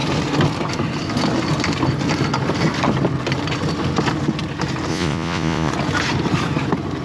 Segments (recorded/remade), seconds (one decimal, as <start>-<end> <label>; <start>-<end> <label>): 0.0-4.9 recorded; 4.9-5.7 remade; 5.7-7.0 recorded